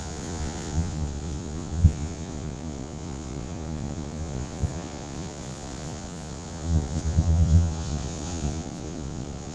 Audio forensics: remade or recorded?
remade